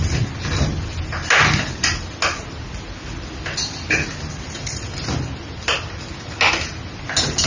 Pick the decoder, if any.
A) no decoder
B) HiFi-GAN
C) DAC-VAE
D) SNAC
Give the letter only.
A